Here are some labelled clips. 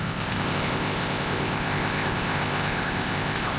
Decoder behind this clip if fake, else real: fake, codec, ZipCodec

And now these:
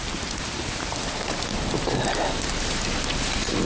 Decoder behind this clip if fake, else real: real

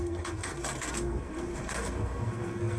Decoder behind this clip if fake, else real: fake, codec, SNAC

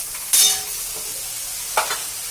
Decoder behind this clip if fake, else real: real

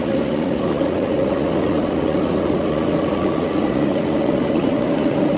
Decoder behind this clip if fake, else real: fake, vocoder, Vocos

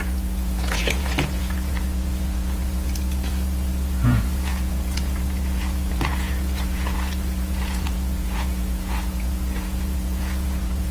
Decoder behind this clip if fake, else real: fake, vocoder, Vocos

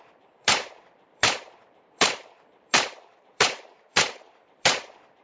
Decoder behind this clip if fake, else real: fake, vocoder, BigVGAN v2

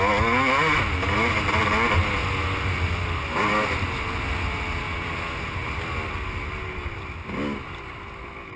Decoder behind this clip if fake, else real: real